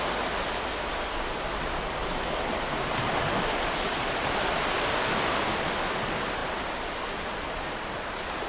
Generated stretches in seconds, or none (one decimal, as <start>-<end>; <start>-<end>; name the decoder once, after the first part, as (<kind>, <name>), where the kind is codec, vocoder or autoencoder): none